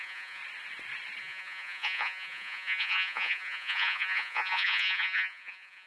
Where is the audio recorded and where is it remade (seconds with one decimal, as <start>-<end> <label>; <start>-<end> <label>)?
0.0-0.4 remade; 0.4-1.2 recorded; 1.2-5.9 remade